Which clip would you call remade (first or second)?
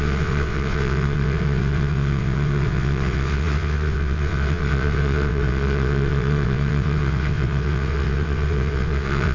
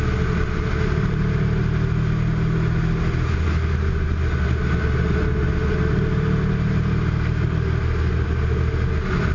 first